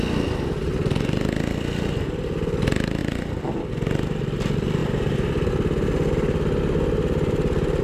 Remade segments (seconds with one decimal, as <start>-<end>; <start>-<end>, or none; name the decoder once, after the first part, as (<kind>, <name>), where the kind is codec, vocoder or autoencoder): none